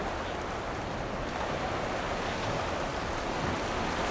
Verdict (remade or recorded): recorded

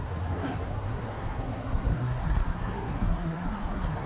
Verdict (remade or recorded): remade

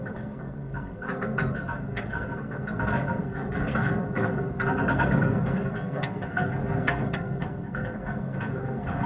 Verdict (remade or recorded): remade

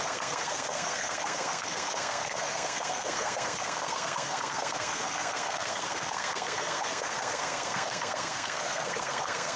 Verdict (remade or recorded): remade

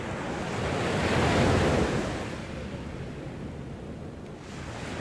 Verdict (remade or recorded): recorded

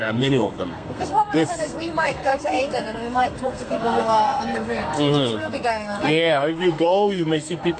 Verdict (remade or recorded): remade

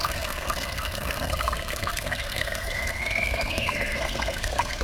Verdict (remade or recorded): remade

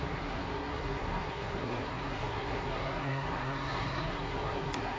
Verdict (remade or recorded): remade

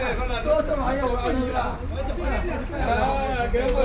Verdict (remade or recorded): recorded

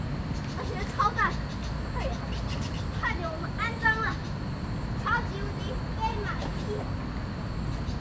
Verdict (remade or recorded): recorded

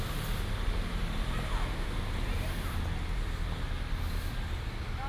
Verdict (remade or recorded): recorded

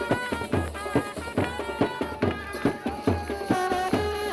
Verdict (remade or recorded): recorded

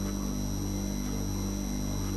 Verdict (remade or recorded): recorded